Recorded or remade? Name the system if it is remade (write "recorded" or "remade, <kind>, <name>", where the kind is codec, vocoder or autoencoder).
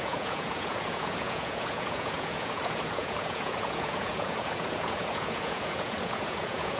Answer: remade, vocoder, Vocos